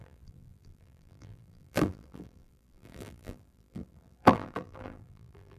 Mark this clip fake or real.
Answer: fake